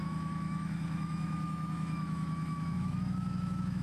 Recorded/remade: remade